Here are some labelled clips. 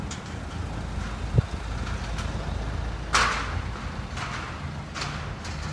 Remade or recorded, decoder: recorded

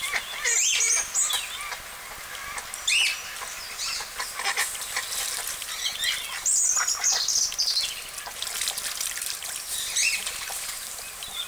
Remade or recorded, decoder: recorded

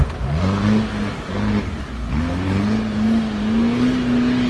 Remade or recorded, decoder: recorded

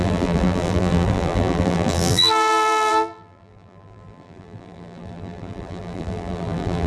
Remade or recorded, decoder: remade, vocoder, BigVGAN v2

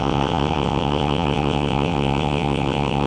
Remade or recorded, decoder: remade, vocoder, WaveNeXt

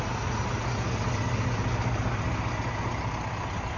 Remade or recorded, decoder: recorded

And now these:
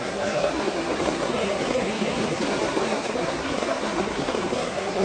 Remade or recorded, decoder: remade, codec, SNAC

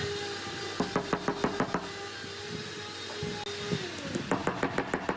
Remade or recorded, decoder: recorded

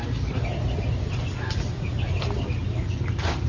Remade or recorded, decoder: recorded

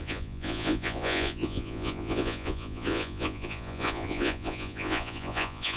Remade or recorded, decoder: remade, vocoder, Vocos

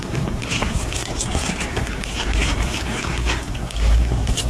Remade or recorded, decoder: remade, codec, SNAC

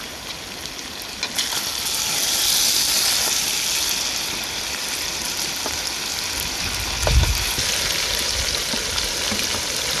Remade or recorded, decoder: recorded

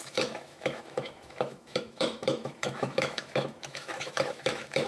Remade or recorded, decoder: remade, autoencoder, DAC-VAE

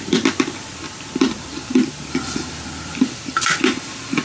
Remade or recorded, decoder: remade, vocoder, BigVGAN v2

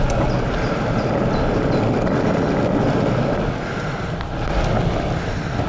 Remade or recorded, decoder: recorded